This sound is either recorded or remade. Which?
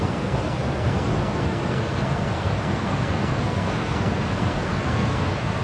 remade